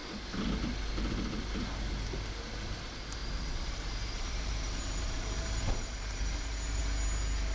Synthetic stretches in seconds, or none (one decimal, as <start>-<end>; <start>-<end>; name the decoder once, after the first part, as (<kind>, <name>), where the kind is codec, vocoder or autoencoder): 3.2-6.8 (vocoder, BigVGAN v2)